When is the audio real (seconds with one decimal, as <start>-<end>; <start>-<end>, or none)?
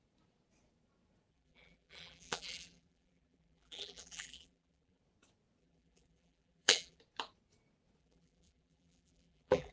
0.0-1.3; 5.0-5.6; 7.0-8.0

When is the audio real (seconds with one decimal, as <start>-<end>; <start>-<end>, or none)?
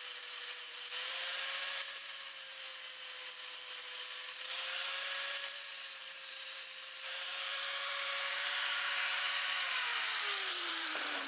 2.7-3.7; 9.9-10.5